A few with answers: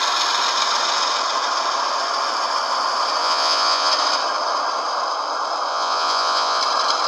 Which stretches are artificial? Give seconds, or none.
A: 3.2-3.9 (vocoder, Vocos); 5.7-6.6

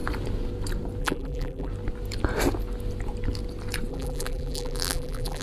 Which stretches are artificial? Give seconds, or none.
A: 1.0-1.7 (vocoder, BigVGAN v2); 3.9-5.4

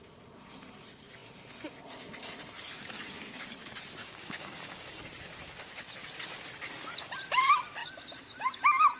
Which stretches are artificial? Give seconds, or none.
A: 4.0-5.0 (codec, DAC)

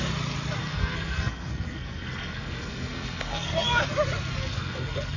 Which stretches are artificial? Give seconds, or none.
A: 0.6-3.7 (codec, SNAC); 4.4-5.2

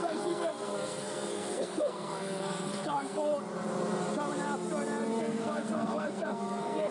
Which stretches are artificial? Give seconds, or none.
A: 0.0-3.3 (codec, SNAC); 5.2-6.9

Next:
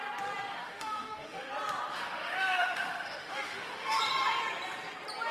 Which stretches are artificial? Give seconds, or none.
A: 0.5-1.5 (autoencoder, DAC-VAE); 1.9-4.0

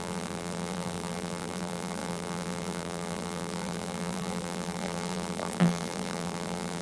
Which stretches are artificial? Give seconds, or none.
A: 0.0-6.8 (vocoder, BigVGAN v2)